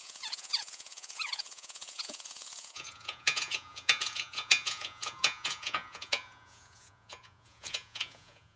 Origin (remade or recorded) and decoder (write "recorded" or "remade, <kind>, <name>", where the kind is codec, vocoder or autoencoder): remade, vocoder, Vocos